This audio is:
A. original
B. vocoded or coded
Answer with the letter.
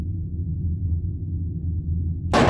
A